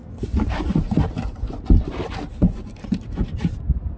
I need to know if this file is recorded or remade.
recorded